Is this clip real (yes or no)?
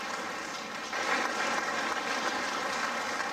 yes